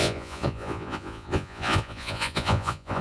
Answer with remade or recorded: remade